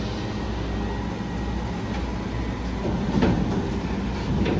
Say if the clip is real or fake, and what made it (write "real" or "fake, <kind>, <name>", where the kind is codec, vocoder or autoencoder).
real